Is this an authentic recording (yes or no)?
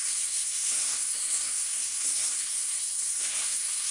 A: no